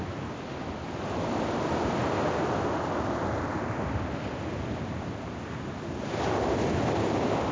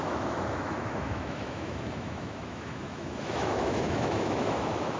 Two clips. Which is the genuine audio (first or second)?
first